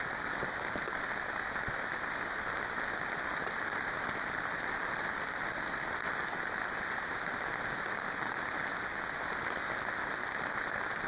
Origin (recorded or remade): recorded